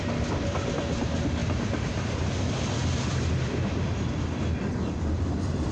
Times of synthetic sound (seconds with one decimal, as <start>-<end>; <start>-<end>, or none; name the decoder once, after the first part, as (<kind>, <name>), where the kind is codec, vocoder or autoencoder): none